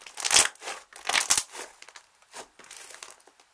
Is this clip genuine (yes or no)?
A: yes